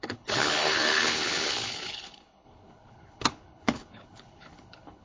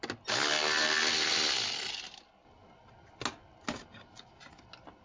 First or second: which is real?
second